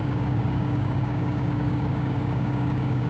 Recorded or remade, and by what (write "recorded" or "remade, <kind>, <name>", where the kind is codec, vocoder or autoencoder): remade, codec, DAC